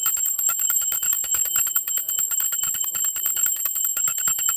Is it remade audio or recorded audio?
remade